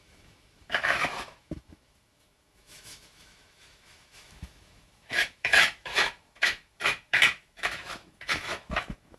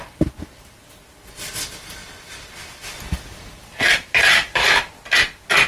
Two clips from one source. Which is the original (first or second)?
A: second